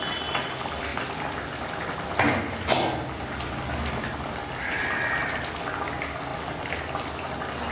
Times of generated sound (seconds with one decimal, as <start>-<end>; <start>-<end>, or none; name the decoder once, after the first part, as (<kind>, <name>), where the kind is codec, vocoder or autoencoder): none